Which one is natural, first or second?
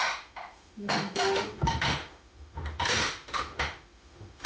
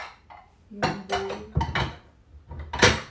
second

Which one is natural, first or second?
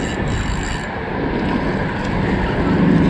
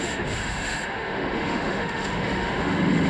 first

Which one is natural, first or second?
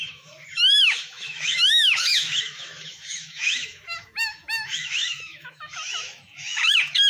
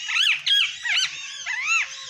second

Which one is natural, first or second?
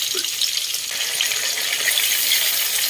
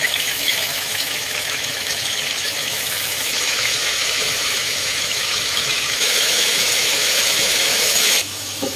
first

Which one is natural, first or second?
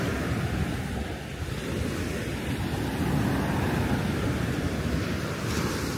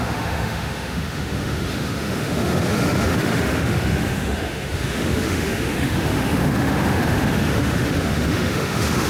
first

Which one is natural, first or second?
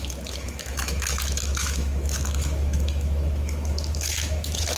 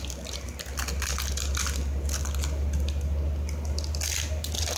second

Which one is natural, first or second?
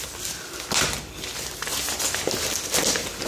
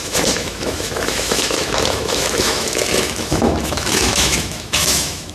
first